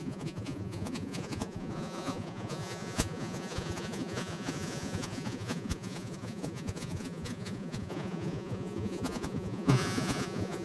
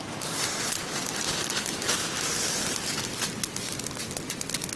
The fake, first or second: first